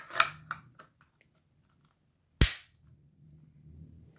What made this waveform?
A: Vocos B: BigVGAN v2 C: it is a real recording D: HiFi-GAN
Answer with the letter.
C